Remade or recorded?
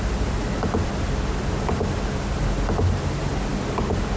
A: recorded